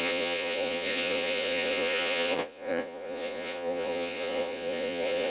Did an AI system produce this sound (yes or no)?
yes